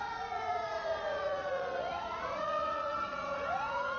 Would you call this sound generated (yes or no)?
yes